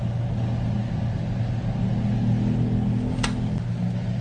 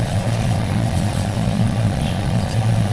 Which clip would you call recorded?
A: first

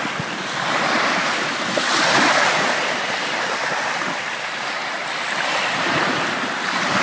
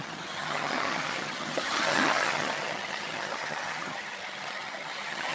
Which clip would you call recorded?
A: first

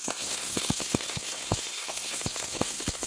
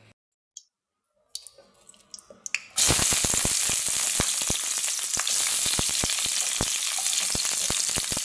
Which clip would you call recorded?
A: second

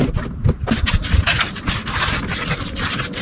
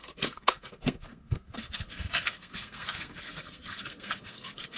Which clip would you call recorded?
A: first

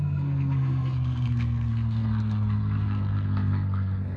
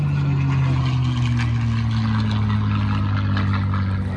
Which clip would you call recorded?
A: second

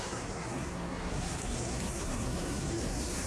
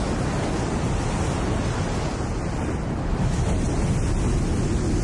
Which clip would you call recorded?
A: second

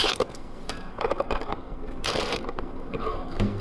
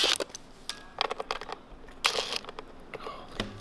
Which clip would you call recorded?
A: second